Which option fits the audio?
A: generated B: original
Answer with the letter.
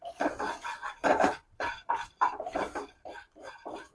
A